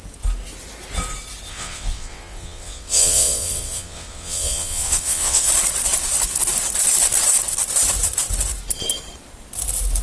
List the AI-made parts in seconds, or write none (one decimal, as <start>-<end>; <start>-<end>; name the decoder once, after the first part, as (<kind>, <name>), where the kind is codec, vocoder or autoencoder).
1.5-5.5 (vocoder, WaveNeXt)